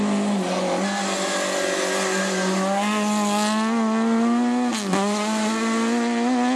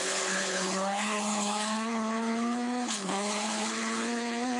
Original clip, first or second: first